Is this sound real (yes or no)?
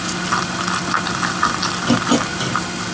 yes